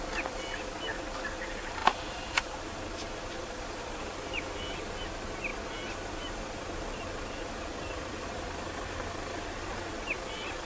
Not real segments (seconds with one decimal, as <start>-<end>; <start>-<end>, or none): none

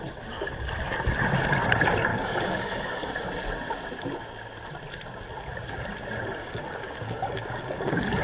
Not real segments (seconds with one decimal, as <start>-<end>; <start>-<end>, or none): 2.1-3.1; 6.4-8.2

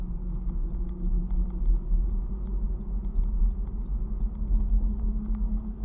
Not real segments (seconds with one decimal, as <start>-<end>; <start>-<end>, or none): 0.0-1.2; 4.7-5.8

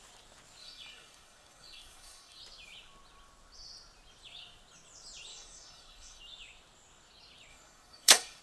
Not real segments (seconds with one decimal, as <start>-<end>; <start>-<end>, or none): 0.6-2.4; 5.3-6.2; 7.5-8.4

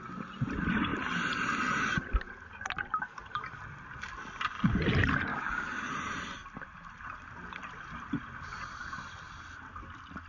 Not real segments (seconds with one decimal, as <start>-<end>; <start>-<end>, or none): 5.3-5.9